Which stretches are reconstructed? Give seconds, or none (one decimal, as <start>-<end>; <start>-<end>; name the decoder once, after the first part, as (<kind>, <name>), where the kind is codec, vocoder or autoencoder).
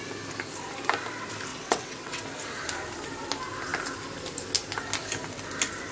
1.5-2.2 (vocoder, WaveNeXt)